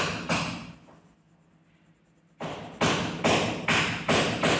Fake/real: real